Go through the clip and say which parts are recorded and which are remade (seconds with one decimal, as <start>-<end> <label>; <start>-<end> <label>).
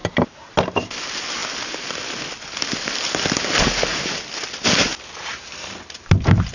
0.0-6.5 recorded